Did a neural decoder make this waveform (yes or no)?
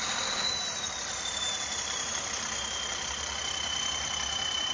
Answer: yes